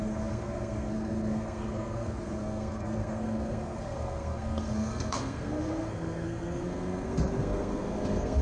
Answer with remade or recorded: remade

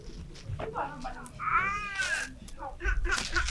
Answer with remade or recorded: recorded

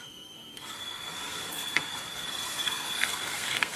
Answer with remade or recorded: remade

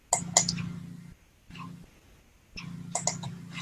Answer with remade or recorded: recorded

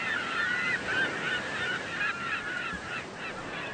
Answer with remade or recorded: remade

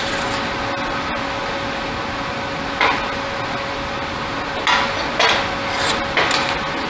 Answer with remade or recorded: recorded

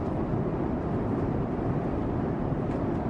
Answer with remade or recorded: recorded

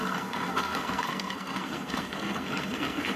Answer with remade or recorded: remade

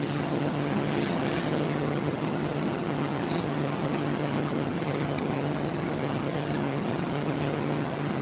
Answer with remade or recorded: remade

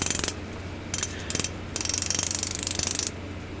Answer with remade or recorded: recorded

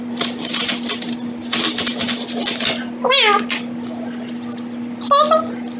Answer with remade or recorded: recorded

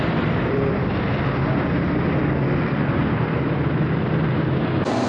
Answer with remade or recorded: recorded